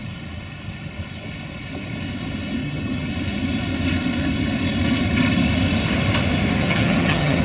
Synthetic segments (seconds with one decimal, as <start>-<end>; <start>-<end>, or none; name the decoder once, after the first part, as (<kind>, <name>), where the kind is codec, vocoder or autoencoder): 2.6-3.1 (vocoder, HiFi-GAN); 6.6-7.4